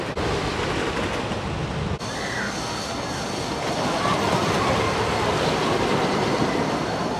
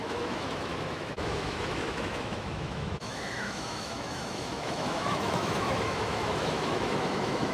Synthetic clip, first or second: second